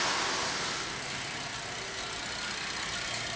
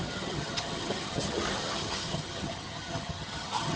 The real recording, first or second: first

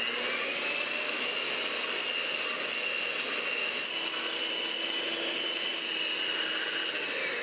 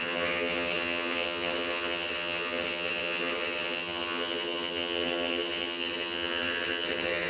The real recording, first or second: first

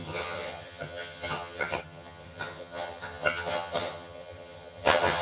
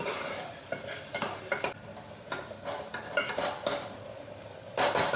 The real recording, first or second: second